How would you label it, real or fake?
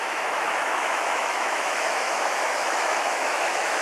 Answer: fake